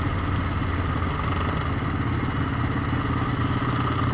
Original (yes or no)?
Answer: yes